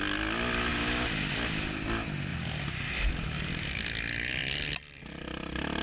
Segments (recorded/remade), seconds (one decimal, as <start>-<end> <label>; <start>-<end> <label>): 0.0-5.8 recorded